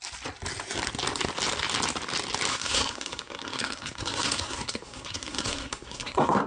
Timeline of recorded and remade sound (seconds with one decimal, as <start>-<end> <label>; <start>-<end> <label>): 0.0-2.5 recorded; 2.5-6.5 remade